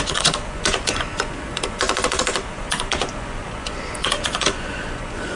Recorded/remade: remade